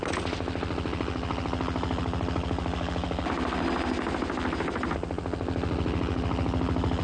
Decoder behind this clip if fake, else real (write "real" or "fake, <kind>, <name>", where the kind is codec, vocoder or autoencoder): real